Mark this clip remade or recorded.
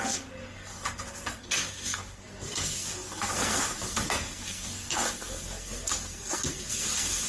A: remade